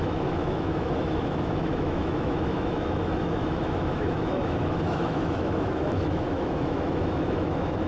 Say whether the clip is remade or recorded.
remade